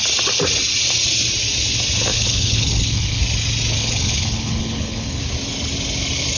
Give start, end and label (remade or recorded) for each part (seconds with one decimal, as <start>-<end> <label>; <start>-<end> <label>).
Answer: 0.0-2.1 recorded; 2.1-3.2 remade; 3.2-3.8 recorded; 3.8-5.2 remade; 5.2-6.4 recorded